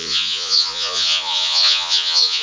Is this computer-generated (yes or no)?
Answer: yes